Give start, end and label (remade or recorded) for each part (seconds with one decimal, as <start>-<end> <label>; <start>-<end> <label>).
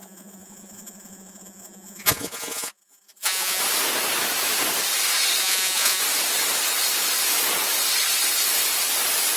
0.0-3.6 remade; 3.6-5.4 recorded; 5.4-6.0 remade; 6.0-9.4 recorded